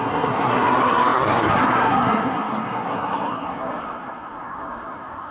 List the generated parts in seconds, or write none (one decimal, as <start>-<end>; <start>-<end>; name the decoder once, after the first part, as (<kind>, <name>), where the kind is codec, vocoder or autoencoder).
0.0-5.3 (codec, SNAC)